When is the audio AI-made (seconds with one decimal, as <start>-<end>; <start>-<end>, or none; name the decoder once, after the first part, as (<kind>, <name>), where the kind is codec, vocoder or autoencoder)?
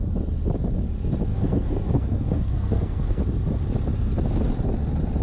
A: 1.3-3.2 (codec, SNAC)